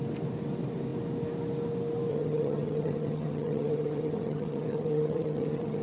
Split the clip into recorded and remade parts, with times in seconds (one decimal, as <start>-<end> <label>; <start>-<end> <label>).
0.0-2.1 recorded; 2.1-5.8 remade